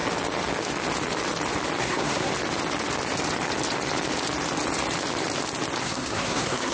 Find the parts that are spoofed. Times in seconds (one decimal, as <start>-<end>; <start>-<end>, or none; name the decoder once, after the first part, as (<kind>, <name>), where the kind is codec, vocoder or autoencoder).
1.8-2.3 (codec, SNAC); 5.8-6.7